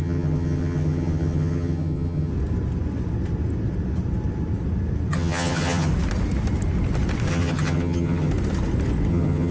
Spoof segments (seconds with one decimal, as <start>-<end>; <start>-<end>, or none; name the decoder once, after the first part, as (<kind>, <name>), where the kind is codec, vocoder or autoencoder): 0.0-2.3 (vocoder, HiFi-GAN); 5.1-5.9; 7.3-8.3; 9.1-9.5